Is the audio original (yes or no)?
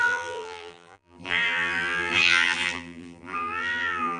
no